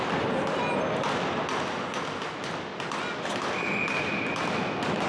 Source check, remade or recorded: recorded